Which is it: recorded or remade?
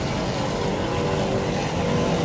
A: recorded